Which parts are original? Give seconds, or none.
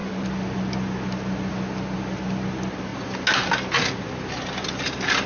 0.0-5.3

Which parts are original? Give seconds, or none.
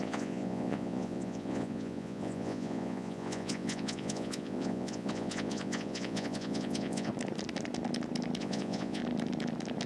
7.1-8.4; 9.0-9.9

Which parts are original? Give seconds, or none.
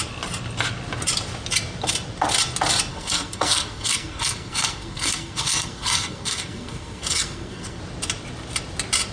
0.0-2.9; 7.8-9.1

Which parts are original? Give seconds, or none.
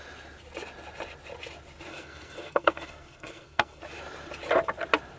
0.0-1.9; 3.8-5.2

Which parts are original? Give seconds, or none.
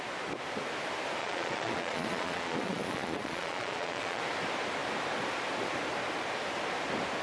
0.0-1.2; 4.2-7.2